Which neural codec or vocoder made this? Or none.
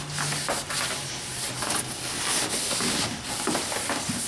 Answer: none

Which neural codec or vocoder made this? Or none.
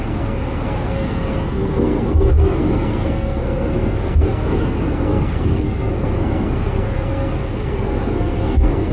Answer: codec, SNAC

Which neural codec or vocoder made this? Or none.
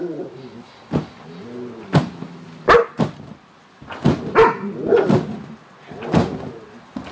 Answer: none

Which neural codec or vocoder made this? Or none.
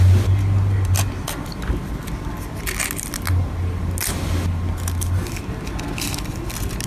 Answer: none